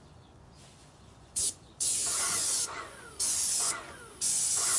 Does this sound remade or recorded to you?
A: remade